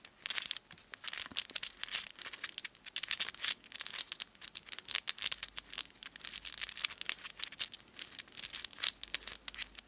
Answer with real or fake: real